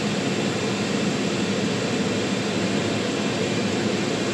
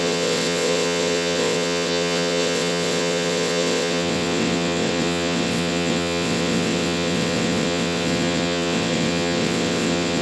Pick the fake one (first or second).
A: second